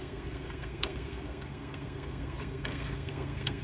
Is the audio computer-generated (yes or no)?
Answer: yes